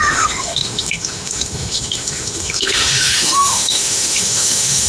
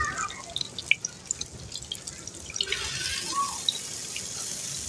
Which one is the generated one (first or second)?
first